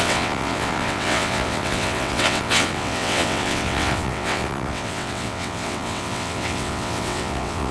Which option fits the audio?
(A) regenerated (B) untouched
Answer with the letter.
A